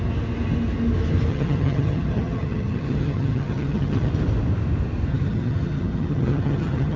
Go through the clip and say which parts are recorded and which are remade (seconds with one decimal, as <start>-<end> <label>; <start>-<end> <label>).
0.0-1.3 recorded; 1.3-4.1 remade; 4.1-5.1 recorded; 5.1-7.0 remade